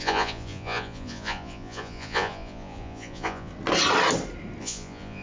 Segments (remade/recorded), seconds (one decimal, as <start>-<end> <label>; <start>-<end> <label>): 0.0-3.5 remade; 3.5-4.6 recorded; 4.6-5.2 remade